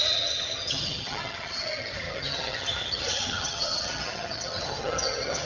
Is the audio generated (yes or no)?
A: yes